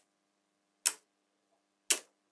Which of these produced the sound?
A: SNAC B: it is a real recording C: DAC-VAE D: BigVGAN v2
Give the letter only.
B